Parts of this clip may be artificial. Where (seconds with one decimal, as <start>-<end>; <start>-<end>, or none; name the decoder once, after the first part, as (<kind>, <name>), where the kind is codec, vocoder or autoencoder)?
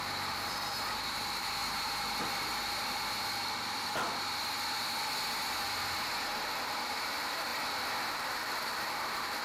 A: 0.0-1.6 (vocoder, BigVGAN v2); 6.6-7.5; 8.1-9.4